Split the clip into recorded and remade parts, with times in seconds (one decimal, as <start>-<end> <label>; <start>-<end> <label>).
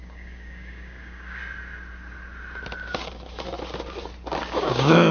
0.0-1.4 remade; 1.4-4.5 recorded; 4.5-5.1 remade